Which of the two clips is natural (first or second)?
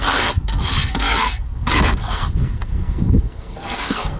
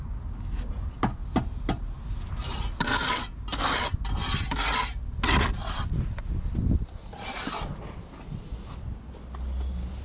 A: second